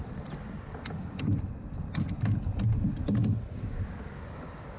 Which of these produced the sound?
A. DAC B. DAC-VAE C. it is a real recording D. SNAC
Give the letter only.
C